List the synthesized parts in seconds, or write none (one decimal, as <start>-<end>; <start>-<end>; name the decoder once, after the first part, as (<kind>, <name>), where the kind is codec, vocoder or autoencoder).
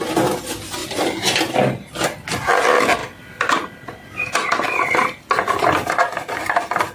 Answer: 3.0-6.5 (vocoder, BigVGAN v2)